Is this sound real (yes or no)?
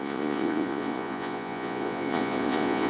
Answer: no